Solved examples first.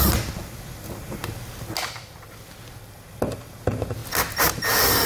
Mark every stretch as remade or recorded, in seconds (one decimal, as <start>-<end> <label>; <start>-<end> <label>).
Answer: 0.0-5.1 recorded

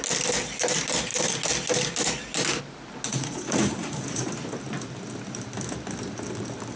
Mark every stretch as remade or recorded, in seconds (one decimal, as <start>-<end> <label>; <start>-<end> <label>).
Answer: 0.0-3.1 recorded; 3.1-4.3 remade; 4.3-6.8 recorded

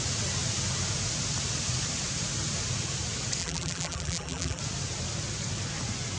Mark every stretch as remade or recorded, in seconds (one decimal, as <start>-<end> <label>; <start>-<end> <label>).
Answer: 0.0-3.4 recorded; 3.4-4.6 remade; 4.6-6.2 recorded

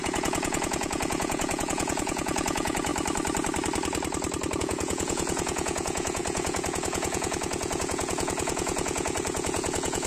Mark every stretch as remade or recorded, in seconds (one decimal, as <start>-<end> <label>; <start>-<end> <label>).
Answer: 0.0-2.9 remade; 2.9-4.6 recorded; 4.6-10.1 remade